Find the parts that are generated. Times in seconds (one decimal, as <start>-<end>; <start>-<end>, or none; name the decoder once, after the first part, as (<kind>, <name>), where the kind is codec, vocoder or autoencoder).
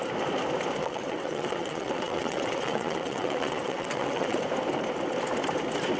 0.8-4.4 (vocoder, WaveNeXt)